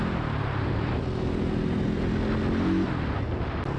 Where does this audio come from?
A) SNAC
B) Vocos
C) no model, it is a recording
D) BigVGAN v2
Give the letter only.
C